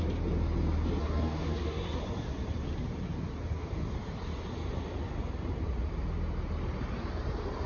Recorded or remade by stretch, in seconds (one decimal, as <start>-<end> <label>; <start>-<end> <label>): 0.0-1.0 recorded; 1.0-2.0 remade; 2.0-7.7 recorded